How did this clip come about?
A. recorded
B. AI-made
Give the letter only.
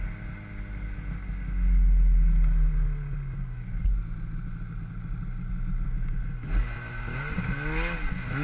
A